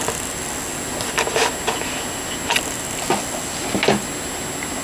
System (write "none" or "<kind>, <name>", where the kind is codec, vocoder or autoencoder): none